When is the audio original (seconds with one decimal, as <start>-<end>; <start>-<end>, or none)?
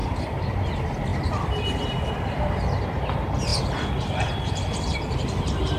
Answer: 0.6-5.8